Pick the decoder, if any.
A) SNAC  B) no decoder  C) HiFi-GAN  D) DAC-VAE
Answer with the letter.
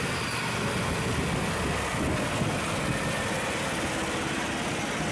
B